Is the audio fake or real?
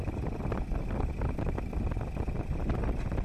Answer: real